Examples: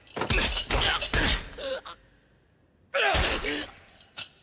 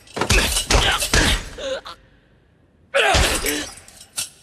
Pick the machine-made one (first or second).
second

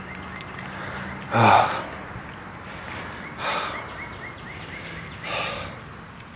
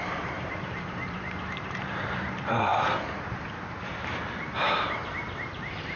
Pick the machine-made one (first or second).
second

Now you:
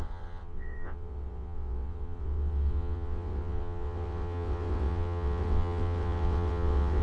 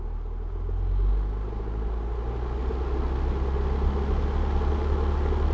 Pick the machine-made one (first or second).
first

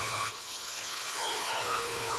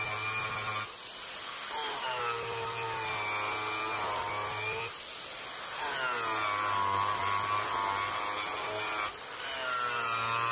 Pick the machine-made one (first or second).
first